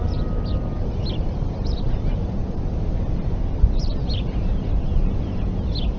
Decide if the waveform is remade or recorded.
recorded